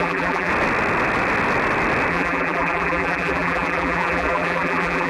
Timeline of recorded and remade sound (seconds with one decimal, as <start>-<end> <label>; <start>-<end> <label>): 0.0-0.5 remade; 0.5-2.1 recorded; 2.1-5.1 remade